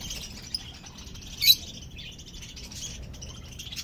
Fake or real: real